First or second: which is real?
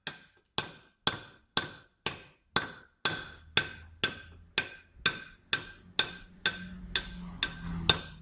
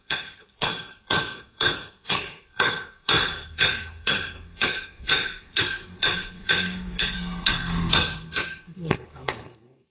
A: first